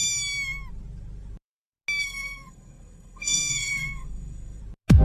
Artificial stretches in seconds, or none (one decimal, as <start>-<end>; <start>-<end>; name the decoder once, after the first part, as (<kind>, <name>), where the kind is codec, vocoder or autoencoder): 2.0-4.6 (codec, SNAC)